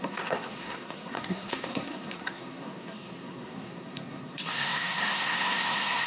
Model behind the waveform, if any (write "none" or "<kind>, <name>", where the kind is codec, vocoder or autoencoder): codec, SNAC